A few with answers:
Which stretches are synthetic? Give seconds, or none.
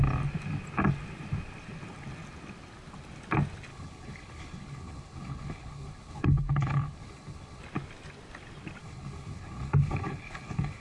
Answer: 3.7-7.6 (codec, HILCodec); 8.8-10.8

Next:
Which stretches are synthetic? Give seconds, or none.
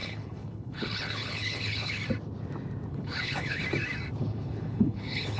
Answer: 0.0-2.0 (codec, HILCodec); 2.9-3.6; 4.2-5.4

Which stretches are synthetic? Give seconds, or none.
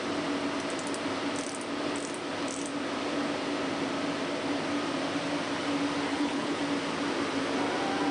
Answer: 6.1-6.6 (codec, HILCodec)